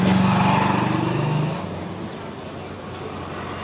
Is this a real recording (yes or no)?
yes